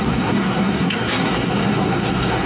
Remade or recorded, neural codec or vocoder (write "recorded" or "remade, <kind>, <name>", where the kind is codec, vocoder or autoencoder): remade, codec, SNAC